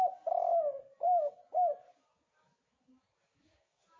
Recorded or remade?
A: remade